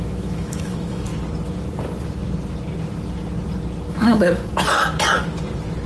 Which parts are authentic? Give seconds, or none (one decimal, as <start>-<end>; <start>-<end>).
1.1-3.9; 4.4-5.9